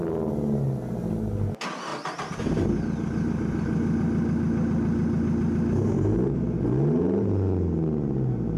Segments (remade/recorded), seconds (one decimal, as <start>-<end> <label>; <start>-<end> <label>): 0.0-1.9 recorded; 1.9-2.7 remade; 2.7-8.6 recorded